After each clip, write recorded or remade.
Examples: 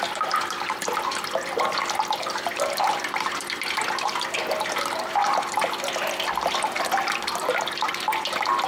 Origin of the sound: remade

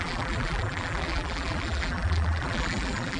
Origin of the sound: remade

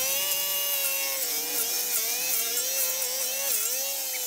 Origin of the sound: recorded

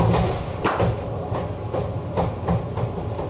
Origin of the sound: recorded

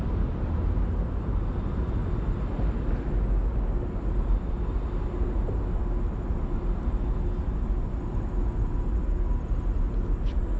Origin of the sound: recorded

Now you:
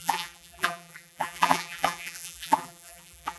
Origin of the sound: remade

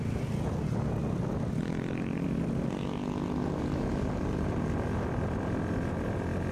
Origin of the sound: recorded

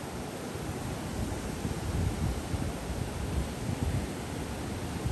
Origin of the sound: recorded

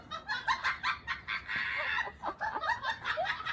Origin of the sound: recorded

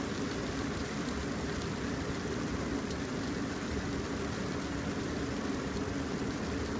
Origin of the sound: recorded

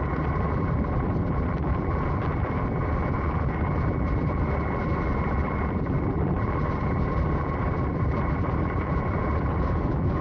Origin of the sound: remade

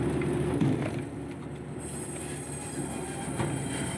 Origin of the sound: recorded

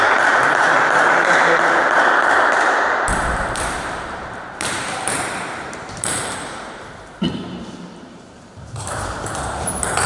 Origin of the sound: remade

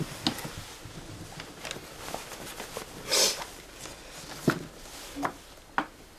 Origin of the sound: recorded